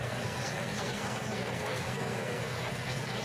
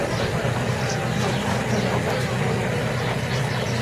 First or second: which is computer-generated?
first